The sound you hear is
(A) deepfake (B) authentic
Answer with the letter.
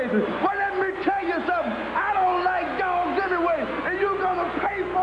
B